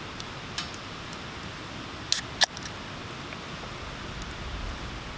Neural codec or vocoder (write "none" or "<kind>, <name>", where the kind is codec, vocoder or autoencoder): none